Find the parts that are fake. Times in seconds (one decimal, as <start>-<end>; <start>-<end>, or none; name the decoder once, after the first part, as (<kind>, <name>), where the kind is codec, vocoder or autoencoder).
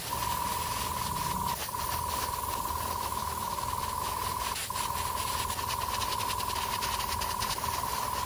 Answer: 3.1-4.0 (autoencoder, DAC-VAE)